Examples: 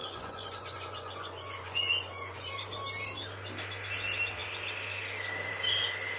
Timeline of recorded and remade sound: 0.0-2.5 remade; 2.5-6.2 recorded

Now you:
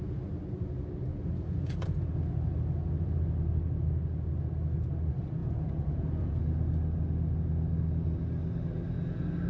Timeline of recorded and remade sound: 0.0-1.1 recorded; 1.1-2.1 remade; 2.1-5.4 recorded; 5.4-6.4 remade; 6.4-9.5 recorded